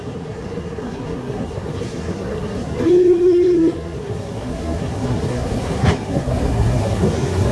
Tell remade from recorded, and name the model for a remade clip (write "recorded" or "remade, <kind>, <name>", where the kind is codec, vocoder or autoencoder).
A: remade, codec, SNAC